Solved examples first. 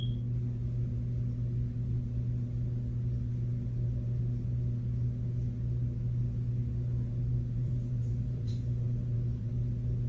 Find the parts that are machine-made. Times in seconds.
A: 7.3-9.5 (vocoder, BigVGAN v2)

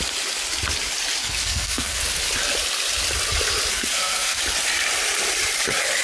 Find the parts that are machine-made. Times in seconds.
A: 1.2-2.0 (codec, SNAC); 3.7-4.4

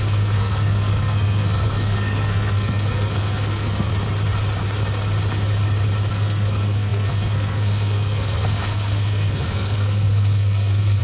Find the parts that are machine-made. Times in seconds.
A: 0.0-3.9 (codec, SNAC); 6.1-11.0

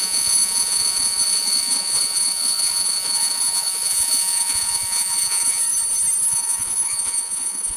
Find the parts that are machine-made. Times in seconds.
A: 0.0-5.6 (vocoder, Vocos); 6.3-7.8

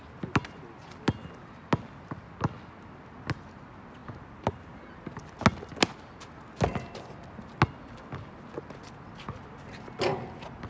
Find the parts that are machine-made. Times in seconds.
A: 4.0-4.9 (vocoder, BigVGAN v2)

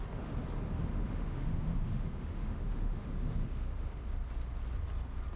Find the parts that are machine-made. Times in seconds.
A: 0.9-4.1 (autoencoder, DAC-VAE)